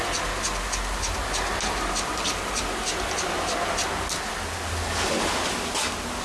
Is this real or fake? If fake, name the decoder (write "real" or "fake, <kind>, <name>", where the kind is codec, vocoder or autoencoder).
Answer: real